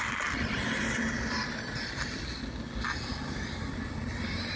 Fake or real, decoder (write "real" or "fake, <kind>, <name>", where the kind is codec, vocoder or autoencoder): real